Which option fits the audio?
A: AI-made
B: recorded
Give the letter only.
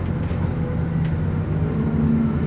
B